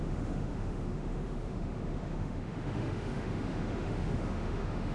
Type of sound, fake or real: fake